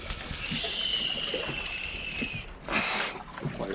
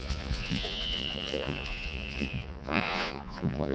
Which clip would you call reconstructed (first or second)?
second